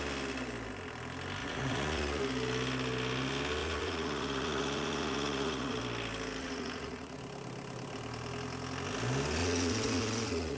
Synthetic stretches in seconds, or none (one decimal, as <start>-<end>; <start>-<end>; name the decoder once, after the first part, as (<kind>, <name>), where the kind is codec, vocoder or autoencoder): 1.4-2.2 (vocoder, Vocos); 3.6-5.8; 6.4-7.2; 9.4-10.6